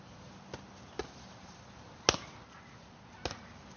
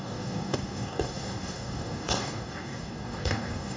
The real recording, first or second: first